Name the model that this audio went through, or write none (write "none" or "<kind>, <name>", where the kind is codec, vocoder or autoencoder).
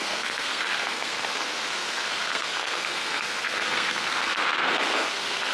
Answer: codec, SNAC